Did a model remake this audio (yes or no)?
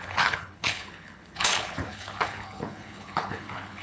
yes